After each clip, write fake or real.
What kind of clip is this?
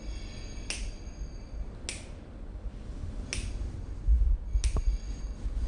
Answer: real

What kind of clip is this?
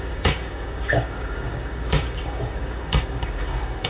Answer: fake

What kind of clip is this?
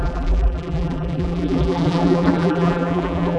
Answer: fake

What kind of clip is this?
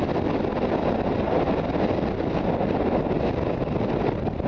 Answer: real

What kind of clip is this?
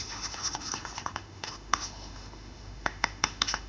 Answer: fake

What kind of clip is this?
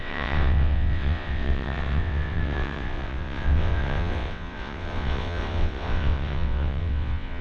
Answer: fake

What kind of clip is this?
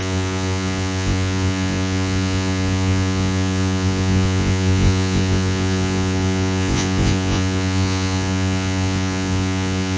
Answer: fake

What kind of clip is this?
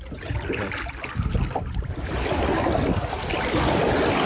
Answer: real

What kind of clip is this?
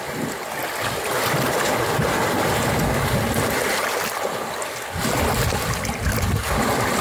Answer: real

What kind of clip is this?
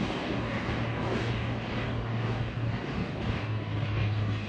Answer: fake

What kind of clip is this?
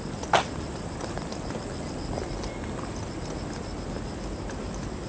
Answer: real